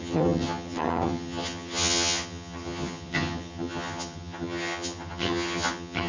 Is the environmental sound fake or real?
fake